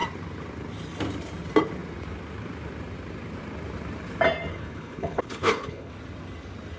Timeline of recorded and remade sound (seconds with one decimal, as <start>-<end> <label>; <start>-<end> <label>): 0.0-4.5 recorded; 4.5-5.9 remade; 5.9-6.8 recorded